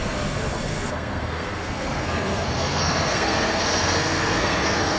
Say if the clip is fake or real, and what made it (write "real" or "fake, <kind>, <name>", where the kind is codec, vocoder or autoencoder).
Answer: fake, codec, SNAC